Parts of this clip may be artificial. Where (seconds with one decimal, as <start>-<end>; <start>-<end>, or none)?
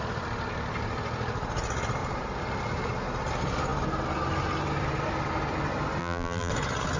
6.0-6.5